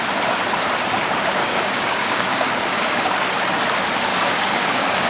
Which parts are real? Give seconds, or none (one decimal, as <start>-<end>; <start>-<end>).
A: 0.0-1.4; 3.2-4.1